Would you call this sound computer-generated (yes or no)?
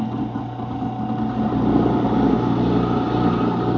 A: no